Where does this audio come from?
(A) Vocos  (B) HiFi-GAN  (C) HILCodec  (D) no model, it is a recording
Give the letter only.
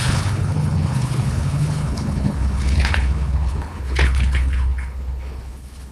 C